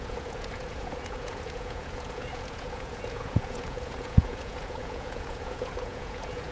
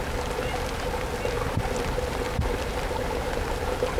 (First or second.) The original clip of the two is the second